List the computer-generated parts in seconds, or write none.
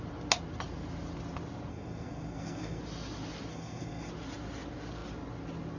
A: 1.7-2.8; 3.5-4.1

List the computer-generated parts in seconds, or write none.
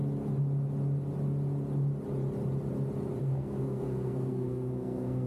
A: 3.2-5.3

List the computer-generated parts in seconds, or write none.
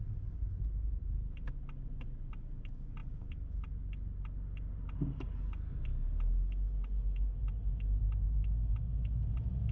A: none